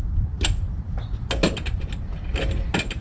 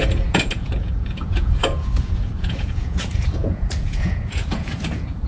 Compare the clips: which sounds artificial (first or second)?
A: second